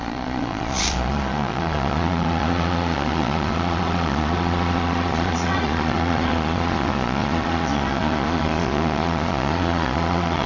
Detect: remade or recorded remade